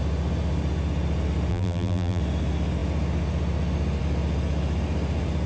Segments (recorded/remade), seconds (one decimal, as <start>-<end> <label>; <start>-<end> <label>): 0.0-1.5 recorded; 1.5-2.2 remade; 2.2-5.5 recorded